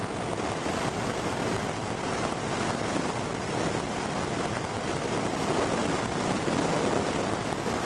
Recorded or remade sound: recorded